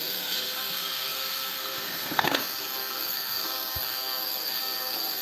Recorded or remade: remade